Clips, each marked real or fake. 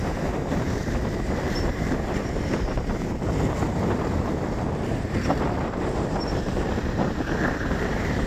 fake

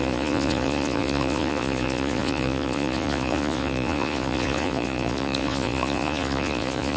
fake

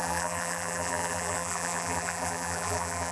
fake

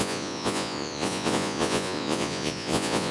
fake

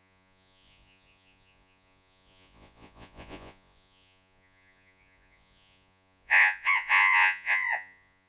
fake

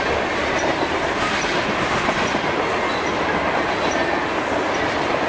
real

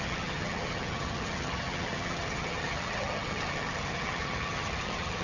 fake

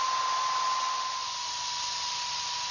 real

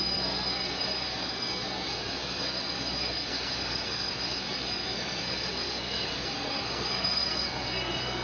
fake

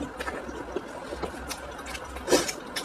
real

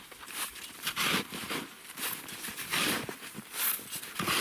real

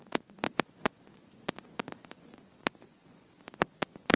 fake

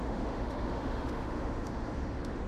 fake